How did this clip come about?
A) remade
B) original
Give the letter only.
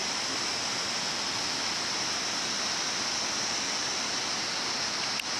B